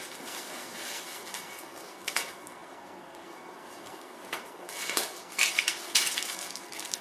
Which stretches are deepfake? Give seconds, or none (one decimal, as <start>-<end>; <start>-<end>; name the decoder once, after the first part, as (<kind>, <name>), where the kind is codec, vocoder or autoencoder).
0.0-7.0 (codec, SNAC)

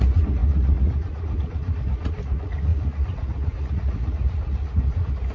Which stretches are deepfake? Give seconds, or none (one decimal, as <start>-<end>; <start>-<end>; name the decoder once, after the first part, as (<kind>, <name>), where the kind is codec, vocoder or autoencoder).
0.0-5.3 (vocoder, Vocos)

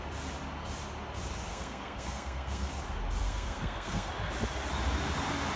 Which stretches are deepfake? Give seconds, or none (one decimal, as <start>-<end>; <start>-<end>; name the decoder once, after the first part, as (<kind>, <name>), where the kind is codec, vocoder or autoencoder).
1.5-2.7 (codec, SNAC); 3.2-4.1

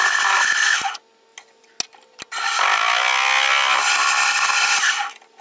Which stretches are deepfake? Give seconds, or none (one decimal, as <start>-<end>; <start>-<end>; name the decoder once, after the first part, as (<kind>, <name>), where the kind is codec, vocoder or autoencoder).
none

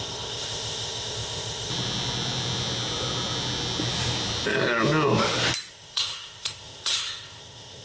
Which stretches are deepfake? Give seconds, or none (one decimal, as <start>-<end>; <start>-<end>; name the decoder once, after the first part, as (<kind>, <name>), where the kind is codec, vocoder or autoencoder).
0.0-1.7 (codec, ZipCodec); 5.7-7.8

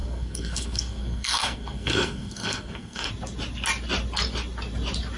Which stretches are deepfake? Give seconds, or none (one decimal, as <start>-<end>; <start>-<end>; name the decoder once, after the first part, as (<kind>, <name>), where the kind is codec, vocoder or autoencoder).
0.0-3.1 (codec, SNAC)

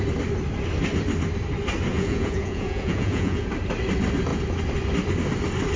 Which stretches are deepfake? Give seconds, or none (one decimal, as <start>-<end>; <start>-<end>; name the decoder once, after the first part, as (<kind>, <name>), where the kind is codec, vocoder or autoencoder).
1.9-3.5 (vocoder, Vocos)

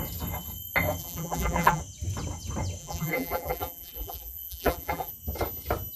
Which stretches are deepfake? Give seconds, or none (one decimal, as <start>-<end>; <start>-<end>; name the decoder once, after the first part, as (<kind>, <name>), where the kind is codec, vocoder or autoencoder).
1.0-1.8 (vocoder, BigVGAN v2); 2.8-5.1